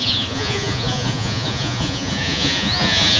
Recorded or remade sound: remade